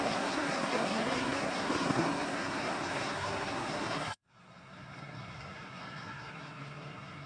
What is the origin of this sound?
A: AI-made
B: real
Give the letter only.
A